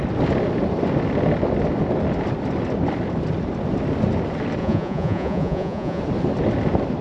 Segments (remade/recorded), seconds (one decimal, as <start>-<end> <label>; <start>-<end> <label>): 0.0-4.6 recorded; 4.6-6.0 remade; 6.0-7.0 recorded